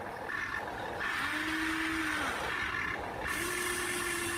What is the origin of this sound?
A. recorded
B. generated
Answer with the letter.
A